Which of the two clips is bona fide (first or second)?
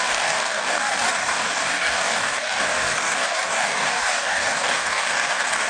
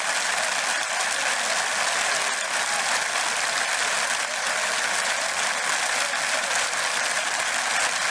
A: second